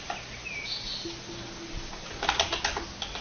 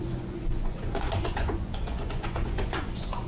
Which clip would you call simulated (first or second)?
second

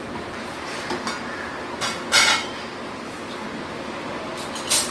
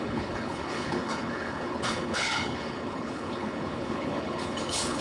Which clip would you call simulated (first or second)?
second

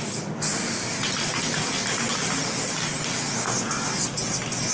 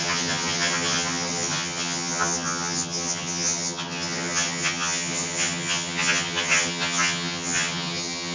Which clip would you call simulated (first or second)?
second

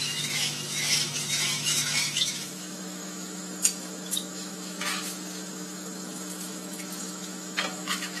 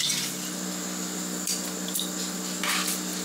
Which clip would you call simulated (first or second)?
first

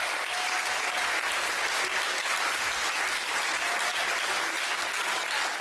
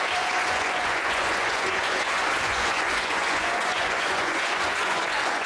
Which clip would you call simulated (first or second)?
second